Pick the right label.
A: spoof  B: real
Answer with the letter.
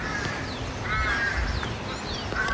B